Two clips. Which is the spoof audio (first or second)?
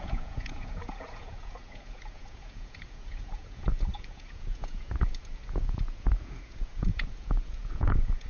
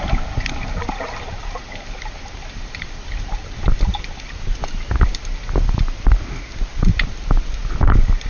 first